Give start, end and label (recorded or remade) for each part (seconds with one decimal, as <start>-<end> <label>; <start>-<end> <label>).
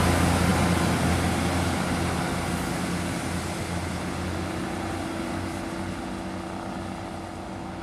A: 0.0-7.8 recorded